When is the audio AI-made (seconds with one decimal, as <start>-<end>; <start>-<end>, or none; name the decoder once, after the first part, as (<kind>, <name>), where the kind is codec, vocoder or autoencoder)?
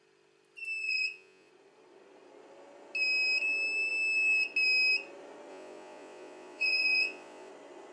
0.8-1.5 (vocoder, Vocos); 5.5-7.5